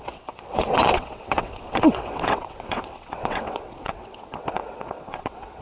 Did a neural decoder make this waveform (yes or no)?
yes